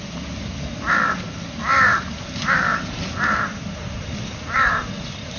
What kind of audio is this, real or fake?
real